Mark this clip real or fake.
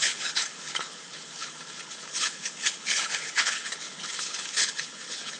fake